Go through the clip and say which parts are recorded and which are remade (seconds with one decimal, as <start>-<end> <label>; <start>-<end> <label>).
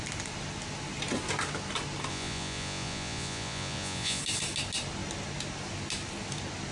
0.0-2.1 recorded; 2.1-4.2 remade; 4.2-6.7 recorded